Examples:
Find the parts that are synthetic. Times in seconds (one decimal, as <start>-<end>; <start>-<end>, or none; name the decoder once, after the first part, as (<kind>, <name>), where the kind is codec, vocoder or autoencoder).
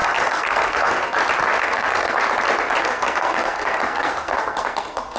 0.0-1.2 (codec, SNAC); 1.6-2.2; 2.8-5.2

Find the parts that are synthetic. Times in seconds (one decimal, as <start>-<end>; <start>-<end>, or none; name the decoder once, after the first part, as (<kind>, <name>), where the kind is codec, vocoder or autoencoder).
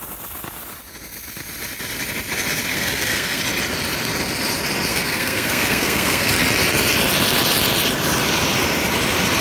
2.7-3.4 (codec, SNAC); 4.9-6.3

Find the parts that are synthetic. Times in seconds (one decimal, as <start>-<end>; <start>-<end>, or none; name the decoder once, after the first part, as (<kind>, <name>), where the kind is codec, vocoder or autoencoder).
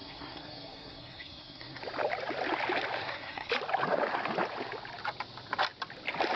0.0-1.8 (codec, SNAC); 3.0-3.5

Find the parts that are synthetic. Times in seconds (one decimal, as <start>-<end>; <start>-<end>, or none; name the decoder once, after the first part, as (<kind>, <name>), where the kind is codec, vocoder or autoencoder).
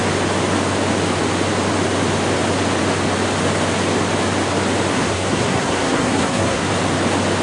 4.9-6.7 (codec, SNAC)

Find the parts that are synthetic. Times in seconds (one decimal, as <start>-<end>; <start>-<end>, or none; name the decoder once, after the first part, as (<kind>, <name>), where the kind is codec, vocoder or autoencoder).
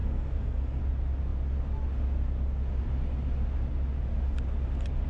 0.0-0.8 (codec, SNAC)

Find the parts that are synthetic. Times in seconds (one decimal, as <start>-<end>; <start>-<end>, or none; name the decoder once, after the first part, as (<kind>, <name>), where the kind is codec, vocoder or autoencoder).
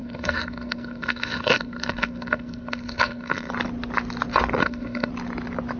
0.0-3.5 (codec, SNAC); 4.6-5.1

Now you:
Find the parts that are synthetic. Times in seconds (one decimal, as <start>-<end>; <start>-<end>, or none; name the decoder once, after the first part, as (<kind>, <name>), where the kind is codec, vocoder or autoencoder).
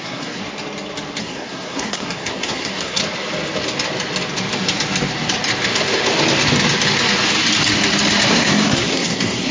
0.0-0.4 (codec, SNAC); 1.2-3.0; 8.3-9.5